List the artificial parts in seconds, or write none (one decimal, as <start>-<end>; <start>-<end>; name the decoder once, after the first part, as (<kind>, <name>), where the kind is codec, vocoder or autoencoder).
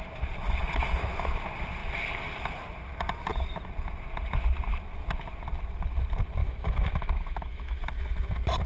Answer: 6.4-7.8 (autoencoder, DAC-VAE)